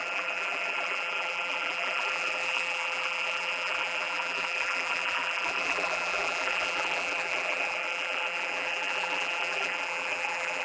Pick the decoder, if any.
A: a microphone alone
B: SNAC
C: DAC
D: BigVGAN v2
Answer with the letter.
D